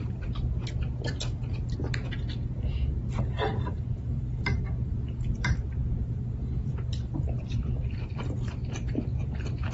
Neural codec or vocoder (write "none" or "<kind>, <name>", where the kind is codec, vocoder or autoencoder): none